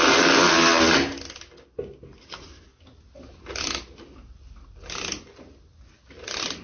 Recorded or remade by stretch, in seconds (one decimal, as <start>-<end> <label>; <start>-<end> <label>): 0.0-6.6 recorded